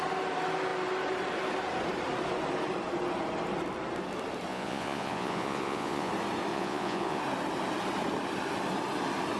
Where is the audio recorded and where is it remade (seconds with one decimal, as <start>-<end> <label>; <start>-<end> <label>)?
0.0-4.5 recorded; 4.5-6.1 remade; 6.1-6.5 recorded; 6.5-7.2 remade; 7.2-9.4 recorded